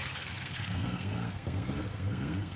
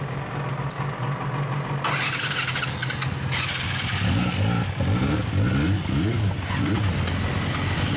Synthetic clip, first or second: first